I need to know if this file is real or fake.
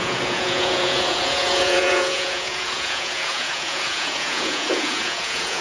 fake